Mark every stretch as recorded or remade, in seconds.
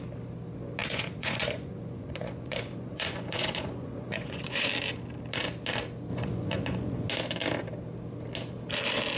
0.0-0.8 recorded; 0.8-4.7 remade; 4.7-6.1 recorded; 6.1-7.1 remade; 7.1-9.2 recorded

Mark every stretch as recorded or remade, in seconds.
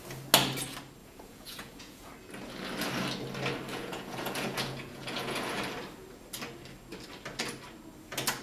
0.0-1.0 recorded; 1.0-2.1 remade; 2.1-3.7 recorded; 3.7-5.6 remade; 5.6-8.4 recorded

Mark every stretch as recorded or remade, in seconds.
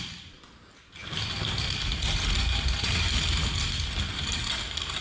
0.0-5.0 recorded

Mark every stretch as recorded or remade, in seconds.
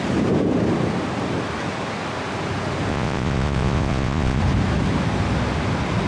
0.0-2.9 recorded; 2.9-4.4 remade; 4.4-6.1 recorded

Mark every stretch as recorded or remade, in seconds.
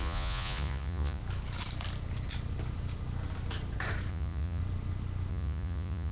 0.0-1.2 remade; 1.2-4.1 recorded; 4.1-4.6 remade; 4.6-5.3 recorded; 5.3-6.1 remade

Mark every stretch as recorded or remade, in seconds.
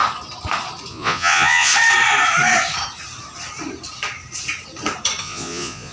0.0-0.9 recorded; 0.9-1.7 remade; 1.7-5.2 recorded; 5.2-5.9 remade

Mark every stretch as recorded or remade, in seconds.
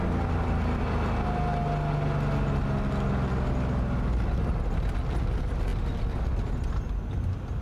0.0-7.6 recorded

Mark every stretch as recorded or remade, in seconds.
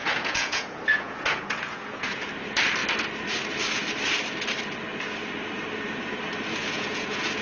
0.0-2.3 remade; 2.3-6.6 recorded; 6.6-7.4 remade